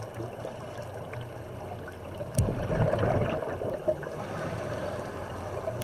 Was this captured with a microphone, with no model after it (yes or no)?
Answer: yes